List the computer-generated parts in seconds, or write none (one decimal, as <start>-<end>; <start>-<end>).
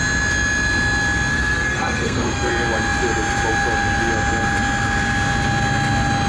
1.3-2.5